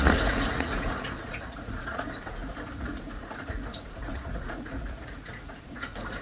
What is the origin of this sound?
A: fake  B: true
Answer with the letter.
A